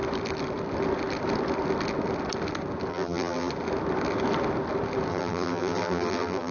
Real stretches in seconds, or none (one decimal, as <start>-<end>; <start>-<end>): 0.0-2.9; 3.5-5.1